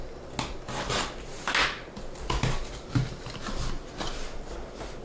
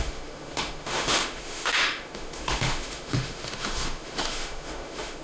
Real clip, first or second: first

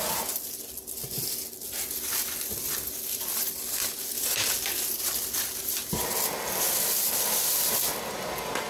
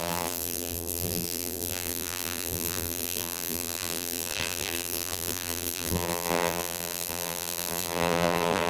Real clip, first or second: first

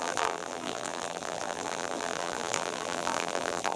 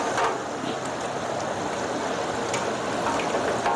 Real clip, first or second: second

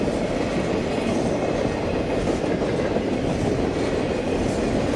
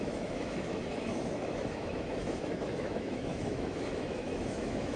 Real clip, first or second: first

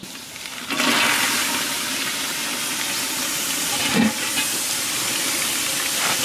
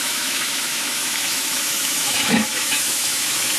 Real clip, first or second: first